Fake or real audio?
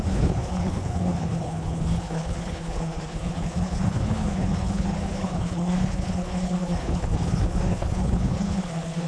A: fake